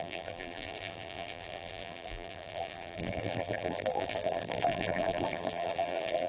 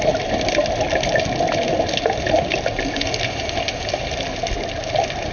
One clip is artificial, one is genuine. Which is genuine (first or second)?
second